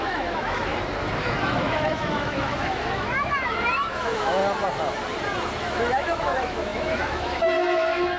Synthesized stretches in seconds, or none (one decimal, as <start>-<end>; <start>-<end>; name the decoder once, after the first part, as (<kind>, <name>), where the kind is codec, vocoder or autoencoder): 0.0-0.7 (autoencoder, DAC-VAE); 1.2-4.4; 5.6-8.2